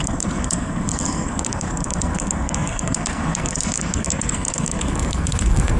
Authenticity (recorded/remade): remade